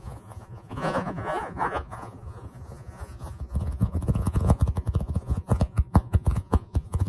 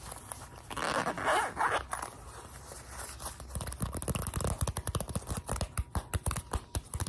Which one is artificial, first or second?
first